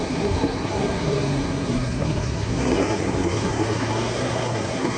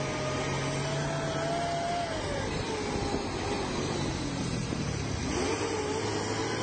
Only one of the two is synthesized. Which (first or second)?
first